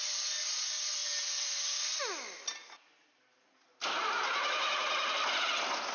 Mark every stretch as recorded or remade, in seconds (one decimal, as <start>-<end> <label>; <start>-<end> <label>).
0.0-5.9 recorded